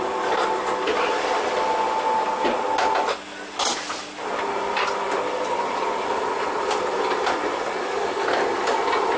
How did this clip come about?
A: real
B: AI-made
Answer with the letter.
A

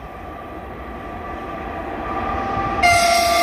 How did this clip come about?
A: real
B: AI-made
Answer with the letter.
A